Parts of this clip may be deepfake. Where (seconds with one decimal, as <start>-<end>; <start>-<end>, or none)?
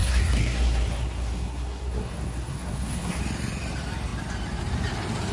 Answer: 0.0-3.2